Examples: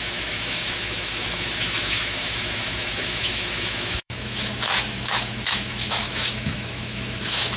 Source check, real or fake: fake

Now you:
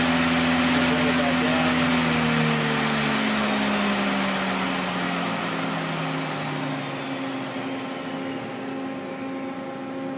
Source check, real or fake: real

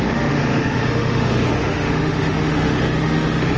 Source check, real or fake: fake